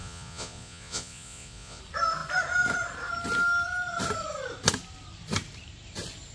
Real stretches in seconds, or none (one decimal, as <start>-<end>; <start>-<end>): 1.8-6.3